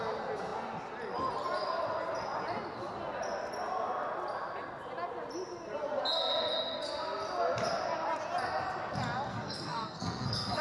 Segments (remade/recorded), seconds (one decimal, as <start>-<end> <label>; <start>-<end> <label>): 0.0-9.3 recorded; 9.3-10.6 remade